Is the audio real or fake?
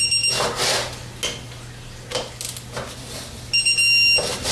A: real